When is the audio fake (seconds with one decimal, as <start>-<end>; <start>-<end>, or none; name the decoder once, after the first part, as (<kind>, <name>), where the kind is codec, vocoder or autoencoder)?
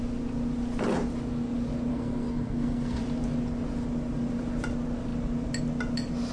1.9-3.0 (codec, SNAC)